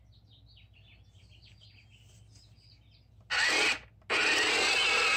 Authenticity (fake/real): real